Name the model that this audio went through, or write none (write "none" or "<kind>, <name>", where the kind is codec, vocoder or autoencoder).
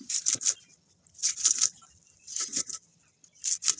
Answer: vocoder, BigVGAN v2